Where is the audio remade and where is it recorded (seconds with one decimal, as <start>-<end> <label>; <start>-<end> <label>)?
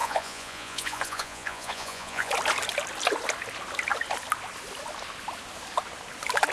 0.0-2.3 remade; 2.3-6.5 recorded